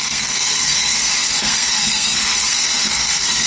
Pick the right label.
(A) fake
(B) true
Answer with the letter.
A